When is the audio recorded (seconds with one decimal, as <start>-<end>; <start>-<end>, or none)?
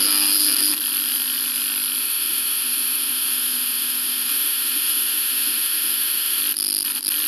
0.0-2.0; 6.4-7.3